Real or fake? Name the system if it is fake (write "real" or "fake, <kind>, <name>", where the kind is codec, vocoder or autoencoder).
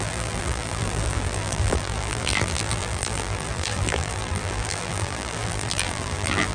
fake, vocoder, BigVGAN v2